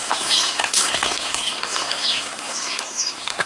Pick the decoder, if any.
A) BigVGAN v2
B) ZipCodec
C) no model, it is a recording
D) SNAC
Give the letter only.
D